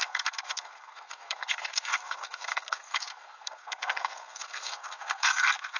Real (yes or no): no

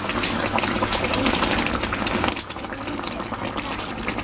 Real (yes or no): no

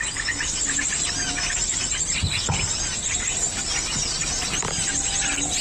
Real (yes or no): yes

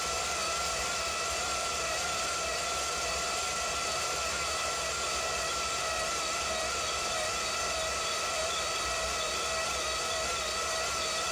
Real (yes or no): no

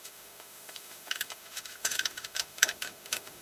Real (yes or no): no